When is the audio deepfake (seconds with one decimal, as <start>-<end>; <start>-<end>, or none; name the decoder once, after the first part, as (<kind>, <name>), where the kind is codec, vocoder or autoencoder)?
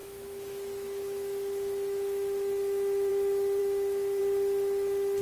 0.0-3.1 (autoencoder, DAC-VAE); 3.6-4.2